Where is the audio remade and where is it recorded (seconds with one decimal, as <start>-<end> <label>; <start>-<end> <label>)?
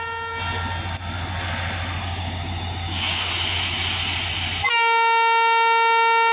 0.0-2.0 recorded; 2.0-3.3 remade; 3.3-6.3 recorded